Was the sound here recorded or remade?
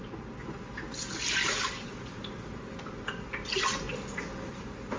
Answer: recorded